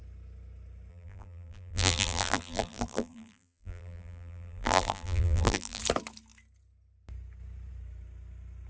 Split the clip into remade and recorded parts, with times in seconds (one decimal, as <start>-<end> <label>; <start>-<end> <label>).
0.0-0.9 recorded; 0.9-5.8 remade; 5.8-8.7 recorded